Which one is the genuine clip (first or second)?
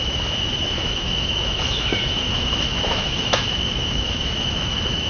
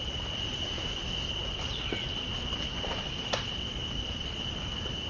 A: second